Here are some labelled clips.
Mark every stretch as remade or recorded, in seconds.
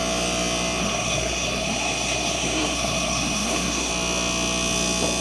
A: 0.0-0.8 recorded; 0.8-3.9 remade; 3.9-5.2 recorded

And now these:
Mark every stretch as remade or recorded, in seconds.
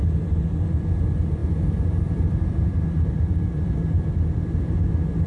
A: 0.0-5.3 recorded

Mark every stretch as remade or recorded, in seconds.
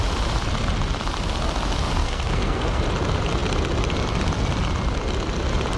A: 0.0-2.0 recorded; 2.0-2.8 remade; 2.8-5.8 recorded